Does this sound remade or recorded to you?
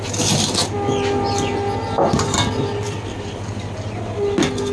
recorded